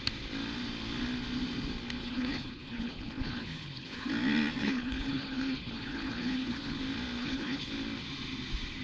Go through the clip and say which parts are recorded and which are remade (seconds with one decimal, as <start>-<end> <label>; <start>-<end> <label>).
0.0-2.0 recorded; 2.0-4.1 remade; 4.1-4.6 recorded; 4.6-6.8 remade; 6.8-7.2 recorded; 7.2-7.7 remade; 7.7-8.8 recorded